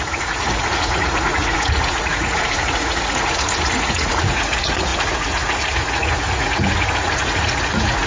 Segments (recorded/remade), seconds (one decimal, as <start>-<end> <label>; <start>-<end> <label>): 0.0-8.1 remade